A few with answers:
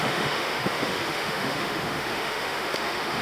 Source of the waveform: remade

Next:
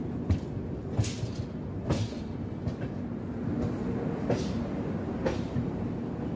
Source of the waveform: recorded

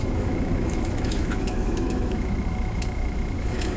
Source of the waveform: remade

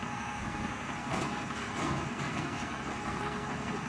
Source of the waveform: remade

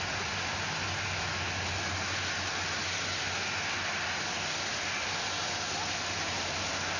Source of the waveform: recorded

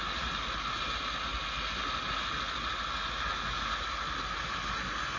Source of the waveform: recorded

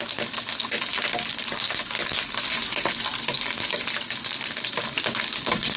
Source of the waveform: recorded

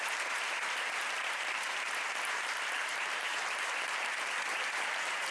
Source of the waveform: remade